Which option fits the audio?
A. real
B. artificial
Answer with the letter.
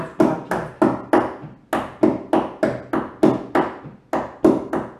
A